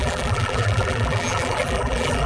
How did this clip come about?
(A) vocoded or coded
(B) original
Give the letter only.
A